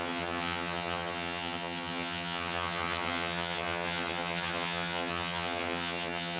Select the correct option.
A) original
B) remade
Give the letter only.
B